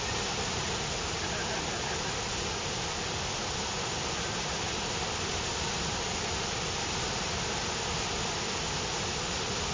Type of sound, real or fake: real